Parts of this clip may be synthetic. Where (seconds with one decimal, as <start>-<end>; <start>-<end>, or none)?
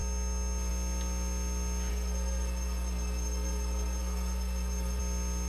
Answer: 1.9-5.0